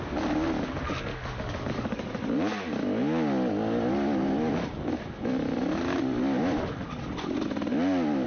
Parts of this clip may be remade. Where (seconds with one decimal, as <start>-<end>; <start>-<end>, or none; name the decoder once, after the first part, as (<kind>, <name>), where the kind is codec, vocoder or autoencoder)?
1.1-2.1 (codec, DAC)